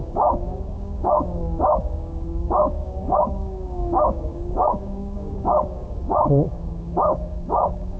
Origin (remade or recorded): remade